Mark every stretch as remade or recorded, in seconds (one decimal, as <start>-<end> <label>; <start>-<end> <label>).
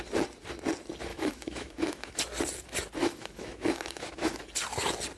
0.0-1.1 recorded; 1.1-2.1 remade; 2.1-3.0 recorded; 3.0-4.4 remade; 4.4-5.2 recorded